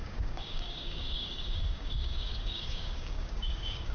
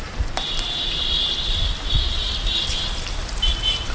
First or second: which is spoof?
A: first